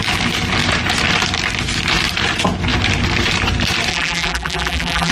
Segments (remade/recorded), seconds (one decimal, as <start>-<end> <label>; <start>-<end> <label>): 0.0-3.9 recorded; 3.9-5.1 remade